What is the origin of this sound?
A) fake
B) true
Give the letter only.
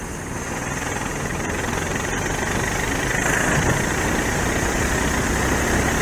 B